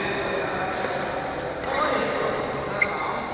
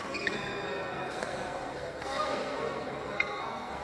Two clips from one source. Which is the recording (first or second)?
first